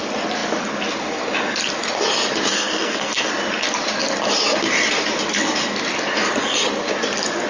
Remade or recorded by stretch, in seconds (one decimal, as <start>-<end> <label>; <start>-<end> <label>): 0.0-2.5 recorded; 2.5-3.3 remade; 3.3-7.5 recorded